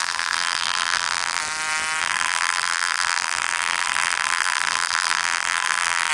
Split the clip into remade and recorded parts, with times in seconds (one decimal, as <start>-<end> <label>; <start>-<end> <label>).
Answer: 0.0-1.4 remade; 1.4-2.0 recorded; 2.0-6.1 remade